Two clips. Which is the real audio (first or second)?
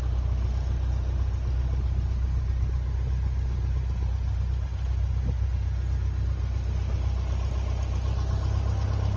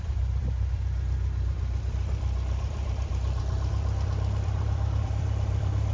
first